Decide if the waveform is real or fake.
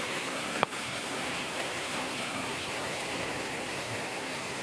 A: fake